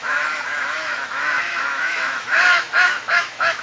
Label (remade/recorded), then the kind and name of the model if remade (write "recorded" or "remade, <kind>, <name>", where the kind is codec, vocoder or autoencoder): remade, autoencoder, DAC-VAE